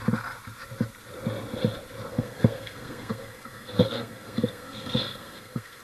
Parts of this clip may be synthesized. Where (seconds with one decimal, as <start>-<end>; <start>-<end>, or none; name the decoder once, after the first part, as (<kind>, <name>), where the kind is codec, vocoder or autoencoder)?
2.1-5.8 (codec, SNAC)